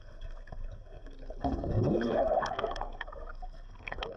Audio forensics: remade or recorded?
remade